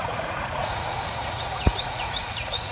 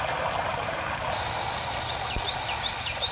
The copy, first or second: first